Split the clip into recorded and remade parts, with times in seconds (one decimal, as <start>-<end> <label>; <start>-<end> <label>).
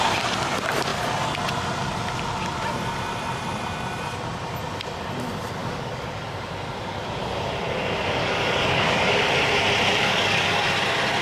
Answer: 0.0-5.6 recorded; 5.6-6.2 remade; 6.2-8.2 recorded; 8.2-9.3 remade; 9.3-9.9 recorded; 9.9-10.6 remade; 10.6-11.2 recorded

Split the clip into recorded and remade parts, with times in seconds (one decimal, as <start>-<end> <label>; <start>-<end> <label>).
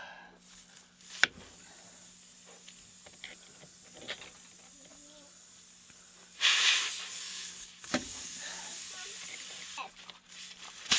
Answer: 0.0-7.3 recorded; 7.3-8.9 remade; 8.9-11.0 recorded